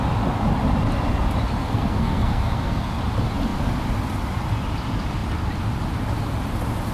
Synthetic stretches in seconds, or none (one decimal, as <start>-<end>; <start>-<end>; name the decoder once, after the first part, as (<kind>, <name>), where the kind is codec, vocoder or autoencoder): 1.6-3.0 (codec, SNAC)